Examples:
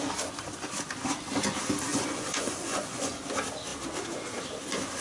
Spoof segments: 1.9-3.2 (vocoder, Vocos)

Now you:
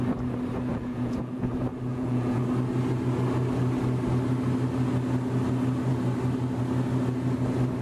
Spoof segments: 0.7-1.5 (vocoder, Vocos); 1.9-2.4

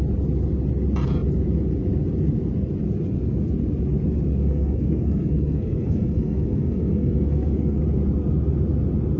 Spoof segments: 4.4-7.8 (codec, SNAC)

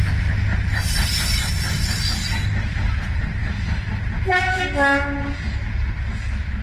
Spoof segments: none